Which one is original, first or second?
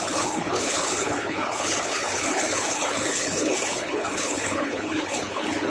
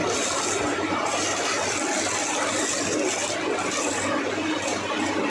second